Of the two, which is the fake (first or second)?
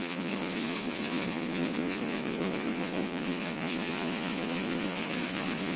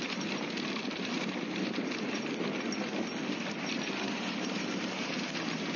first